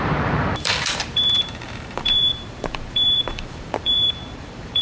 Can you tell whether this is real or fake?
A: fake